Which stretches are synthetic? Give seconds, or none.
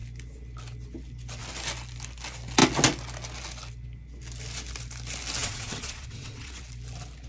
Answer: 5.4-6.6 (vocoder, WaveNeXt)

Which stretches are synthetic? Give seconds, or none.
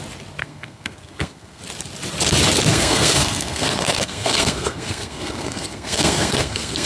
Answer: 0.4-1.6 (codec, SNAC); 2.7-6.9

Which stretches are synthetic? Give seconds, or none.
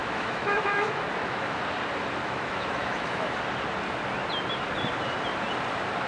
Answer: 0.0-1.6 (autoencoder, DAC-VAE); 2.2-3.4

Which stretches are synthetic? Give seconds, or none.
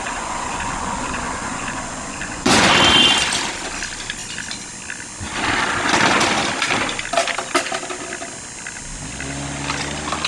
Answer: 0.0-2.7 (vocoder, Vocos)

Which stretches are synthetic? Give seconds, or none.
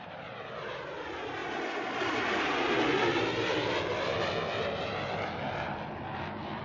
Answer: none